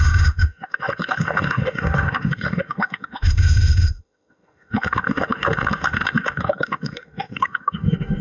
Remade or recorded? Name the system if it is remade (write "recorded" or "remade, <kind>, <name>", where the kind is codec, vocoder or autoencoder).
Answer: remade, autoencoder, DAC-VAE